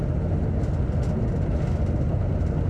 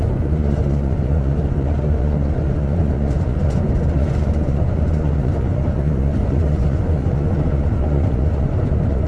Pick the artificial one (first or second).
second